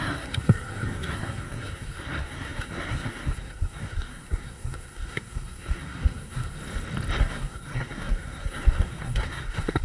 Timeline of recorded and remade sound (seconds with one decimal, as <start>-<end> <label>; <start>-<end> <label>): 0.0-6.6 remade; 6.6-7.2 recorded; 7.2-9.8 remade